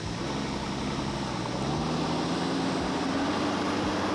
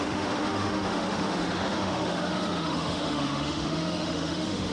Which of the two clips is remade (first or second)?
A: second